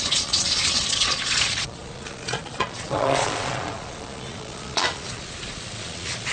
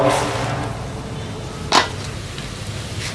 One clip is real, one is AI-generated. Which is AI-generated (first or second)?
first